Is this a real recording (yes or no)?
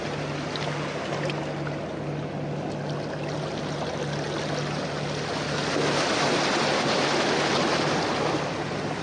yes